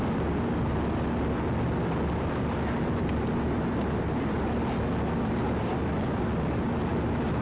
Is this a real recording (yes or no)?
yes